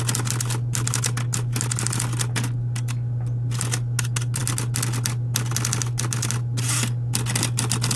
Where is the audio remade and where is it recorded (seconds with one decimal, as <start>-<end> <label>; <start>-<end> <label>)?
0.0-8.0 recorded